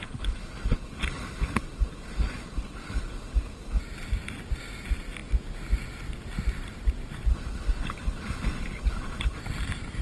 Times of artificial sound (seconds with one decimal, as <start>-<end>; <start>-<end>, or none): 0.0-3.8; 7.3-9.4